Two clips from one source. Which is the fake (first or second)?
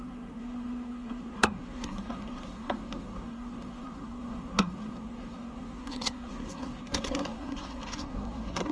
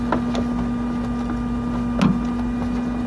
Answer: first